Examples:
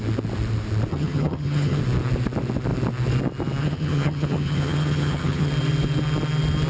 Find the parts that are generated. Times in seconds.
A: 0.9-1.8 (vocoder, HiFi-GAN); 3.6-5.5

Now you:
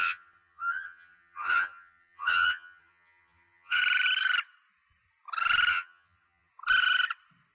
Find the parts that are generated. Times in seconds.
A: 0.0-3.8 (vocoder, HiFi-GAN); 5.7-6.5

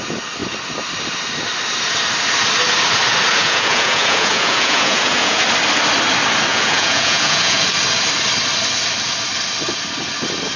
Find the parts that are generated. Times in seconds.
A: 3.4-5.4 (vocoder, Vocos); 6.5-7.6

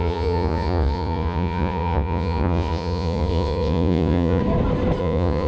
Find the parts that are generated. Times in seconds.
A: 0.0-4.4 (vocoder, Vocos); 5.0-5.5

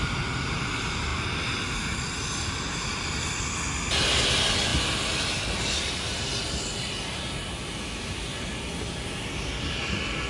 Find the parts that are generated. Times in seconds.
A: none